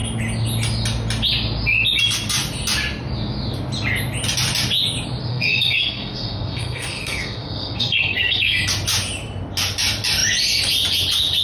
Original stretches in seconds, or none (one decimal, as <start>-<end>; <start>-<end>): 0.0-5.3; 8.6-11.4